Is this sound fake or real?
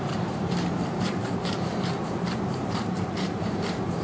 fake